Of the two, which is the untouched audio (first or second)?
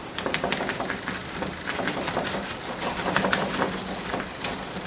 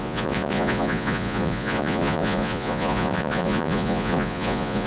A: first